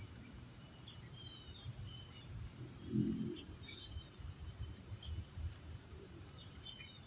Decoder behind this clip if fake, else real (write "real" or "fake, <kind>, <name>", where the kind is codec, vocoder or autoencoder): fake, vocoder, BigVGAN v2